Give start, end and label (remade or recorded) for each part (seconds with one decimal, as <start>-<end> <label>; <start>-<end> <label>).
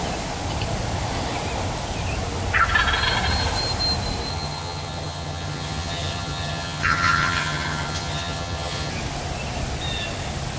0.0-4.3 recorded; 4.3-8.9 remade; 8.9-10.6 recorded